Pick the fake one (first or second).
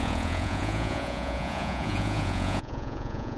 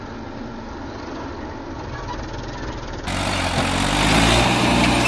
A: first